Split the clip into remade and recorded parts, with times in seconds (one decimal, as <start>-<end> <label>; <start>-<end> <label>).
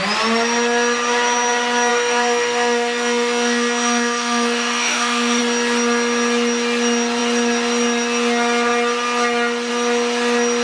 0.0-1.9 recorded; 1.9-5.4 remade; 5.4-10.6 recorded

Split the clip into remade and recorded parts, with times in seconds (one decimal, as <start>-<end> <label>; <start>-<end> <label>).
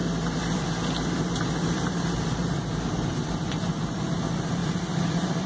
0.0-2.3 remade; 2.3-4.6 recorded; 4.6-5.5 remade